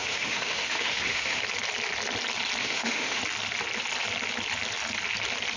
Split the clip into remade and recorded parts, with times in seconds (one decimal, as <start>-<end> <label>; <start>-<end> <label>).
0.0-1.4 remade; 1.4-2.6 recorded; 2.6-3.2 remade; 3.2-5.6 recorded